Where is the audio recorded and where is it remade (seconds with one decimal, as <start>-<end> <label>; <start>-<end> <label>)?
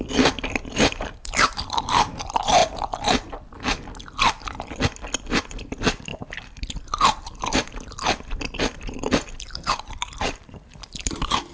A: 0.0-2.6 remade; 2.6-5.5 recorded; 5.5-6.1 remade; 6.1-7.4 recorded; 7.4-11.5 remade